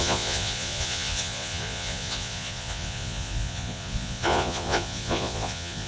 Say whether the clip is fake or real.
fake